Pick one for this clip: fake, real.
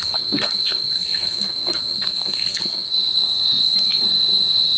fake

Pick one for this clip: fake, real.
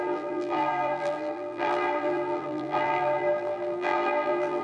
fake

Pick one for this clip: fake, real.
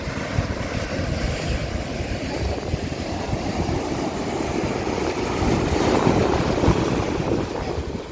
fake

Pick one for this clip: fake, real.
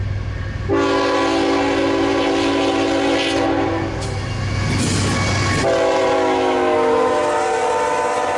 real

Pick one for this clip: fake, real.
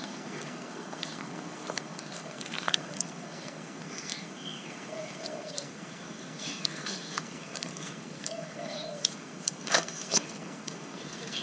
fake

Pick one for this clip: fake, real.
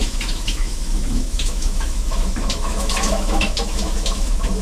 fake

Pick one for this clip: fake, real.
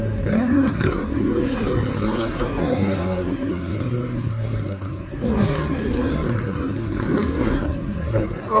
fake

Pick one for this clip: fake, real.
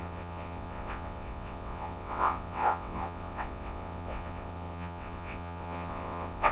fake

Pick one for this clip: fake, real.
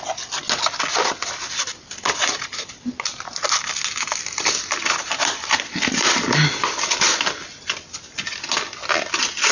real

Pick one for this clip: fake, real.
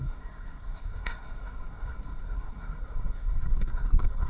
fake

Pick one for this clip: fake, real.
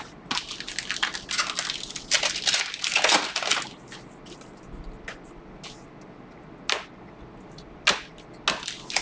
real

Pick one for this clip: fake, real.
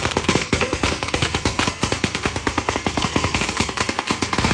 fake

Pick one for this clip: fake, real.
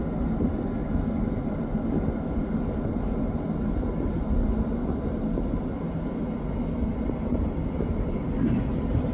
real